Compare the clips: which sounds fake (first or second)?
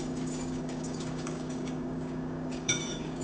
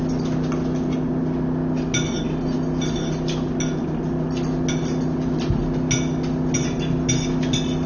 first